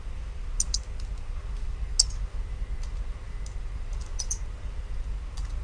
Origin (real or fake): real